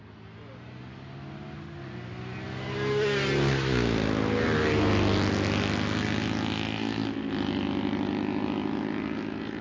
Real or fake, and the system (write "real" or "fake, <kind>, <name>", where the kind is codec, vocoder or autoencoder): real